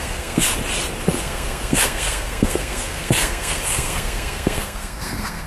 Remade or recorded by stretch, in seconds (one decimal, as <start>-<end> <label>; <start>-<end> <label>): 0.0-0.5 remade; 0.5-1.2 recorded; 1.2-5.5 remade